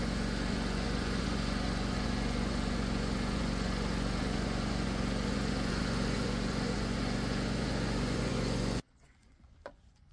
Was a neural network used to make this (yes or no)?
yes